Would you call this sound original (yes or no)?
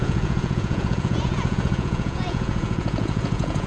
no